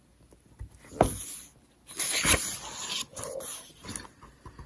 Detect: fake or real real